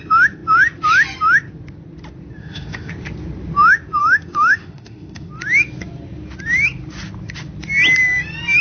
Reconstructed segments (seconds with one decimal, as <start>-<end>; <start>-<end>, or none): 2.4-2.9; 4.0-5.3